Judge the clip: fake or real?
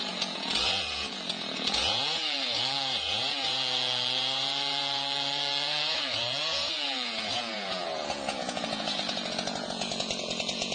fake